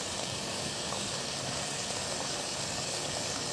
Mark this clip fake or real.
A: fake